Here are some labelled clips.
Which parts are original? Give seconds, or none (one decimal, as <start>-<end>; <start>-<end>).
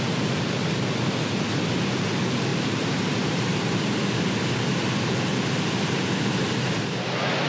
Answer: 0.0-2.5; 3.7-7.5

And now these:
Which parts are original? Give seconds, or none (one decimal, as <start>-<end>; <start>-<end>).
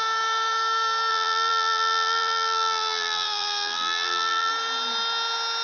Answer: 0.0-1.1; 4.5-5.6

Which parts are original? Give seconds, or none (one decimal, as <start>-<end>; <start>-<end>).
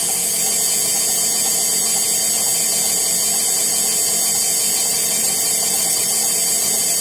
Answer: 0.0-4.9; 6.1-7.0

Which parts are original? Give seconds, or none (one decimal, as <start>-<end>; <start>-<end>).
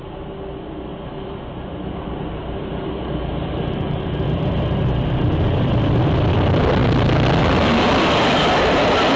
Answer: 0.0-0.9; 6.0-9.2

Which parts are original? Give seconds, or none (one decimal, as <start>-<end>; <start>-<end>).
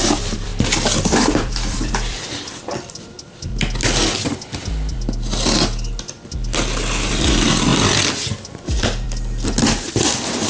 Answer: 0.5-1.3; 3.5-7.1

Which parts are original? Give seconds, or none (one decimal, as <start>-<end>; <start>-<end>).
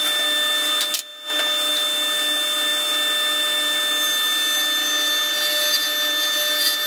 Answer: 0.0-6.9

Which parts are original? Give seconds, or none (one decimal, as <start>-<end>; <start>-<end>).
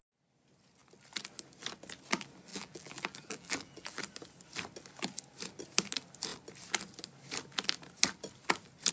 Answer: 0.0-2.5; 4.0-8.9